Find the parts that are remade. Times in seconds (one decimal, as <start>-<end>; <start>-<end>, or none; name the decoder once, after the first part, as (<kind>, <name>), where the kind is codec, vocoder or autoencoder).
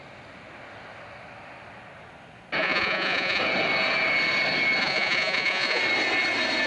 2.6-3.4 (vocoder, Vocos); 4.8-5.8